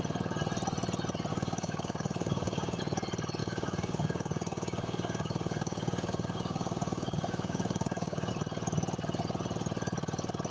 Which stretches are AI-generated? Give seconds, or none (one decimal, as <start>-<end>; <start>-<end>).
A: 1.3-2.8; 3.4-8.3